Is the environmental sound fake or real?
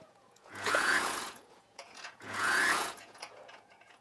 fake